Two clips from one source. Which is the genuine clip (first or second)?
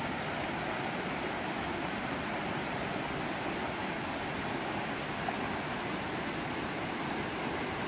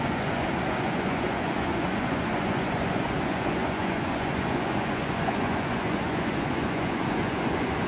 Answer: first